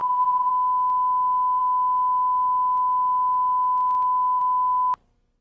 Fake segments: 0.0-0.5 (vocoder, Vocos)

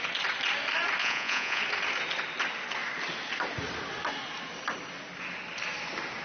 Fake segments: 1.0-1.6 (vocoder, Vocos)

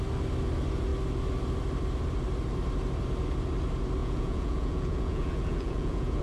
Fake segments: 4.0-6.2 (vocoder, Vocos)

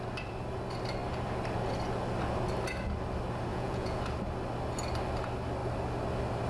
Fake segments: 3.5-4.0 (vocoder, Vocos)

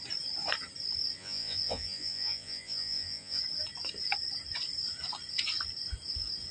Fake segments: 1.2-3.4 (vocoder, Vocos)

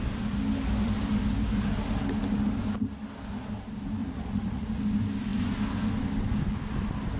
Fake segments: 4.0-4.8 (vocoder, Vocos)

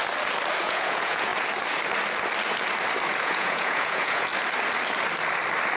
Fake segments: 0.6-1.3 (vocoder, Vocos); 3.2-4.3

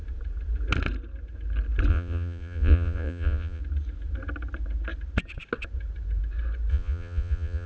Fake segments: 1.9-3.6 (vocoder, Vocos); 6.7-7.7